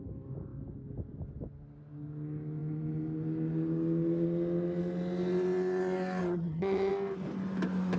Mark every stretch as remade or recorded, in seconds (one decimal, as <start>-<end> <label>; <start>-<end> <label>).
0.0-6.2 recorded; 6.2-6.9 remade; 6.9-8.0 recorded